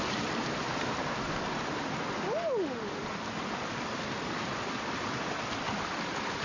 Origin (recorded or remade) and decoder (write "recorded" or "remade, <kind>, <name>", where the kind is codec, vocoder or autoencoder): recorded